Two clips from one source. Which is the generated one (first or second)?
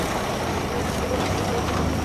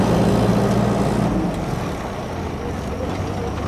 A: first